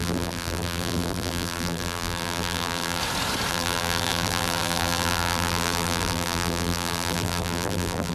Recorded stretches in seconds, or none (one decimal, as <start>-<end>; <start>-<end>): 3.0-3.5